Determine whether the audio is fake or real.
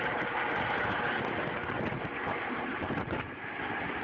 real